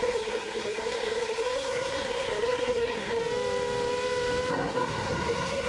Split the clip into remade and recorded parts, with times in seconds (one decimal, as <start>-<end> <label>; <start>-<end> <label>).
0.0-3.2 remade; 3.2-4.5 recorded; 4.5-5.7 remade